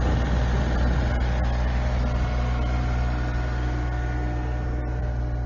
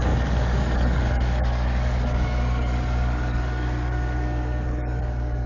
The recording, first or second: first